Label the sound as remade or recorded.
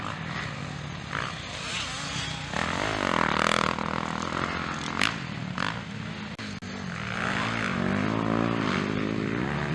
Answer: recorded